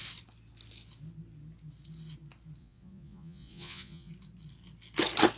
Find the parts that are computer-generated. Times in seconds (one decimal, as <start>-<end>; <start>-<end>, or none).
2.6-4.1